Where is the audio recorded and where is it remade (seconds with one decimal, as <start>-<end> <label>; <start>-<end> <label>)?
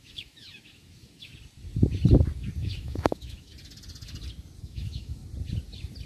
0.0-1.3 remade; 1.3-2.6 recorded; 2.6-3.5 remade; 3.5-4.6 recorded; 4.6-5.2 remade; 5.2-6.1 recorded